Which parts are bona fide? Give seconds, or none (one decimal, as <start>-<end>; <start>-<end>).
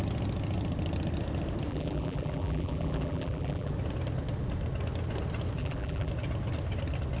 0.0-1.7; 3.7-5.6; 6.1-7.2